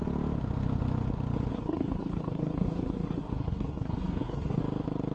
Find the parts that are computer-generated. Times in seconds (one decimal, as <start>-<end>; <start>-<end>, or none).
1.5-4.6